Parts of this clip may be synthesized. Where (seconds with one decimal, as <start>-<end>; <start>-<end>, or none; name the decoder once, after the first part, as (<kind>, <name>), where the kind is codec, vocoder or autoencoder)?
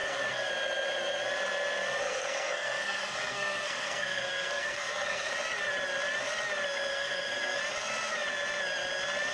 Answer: 0.0-0.5 (codec, SNAC); 2.0-5.3; 6.9-7.6